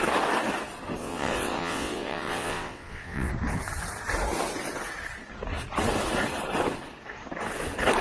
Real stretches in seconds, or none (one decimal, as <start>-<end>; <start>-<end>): 0.0-1.0; 3.3-8.0